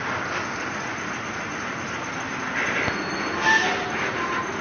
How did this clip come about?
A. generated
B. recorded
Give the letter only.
B